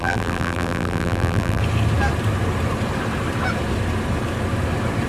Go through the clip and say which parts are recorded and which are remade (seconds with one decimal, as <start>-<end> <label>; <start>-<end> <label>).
0.0-1.6 remade; 1.6-5.1 recorded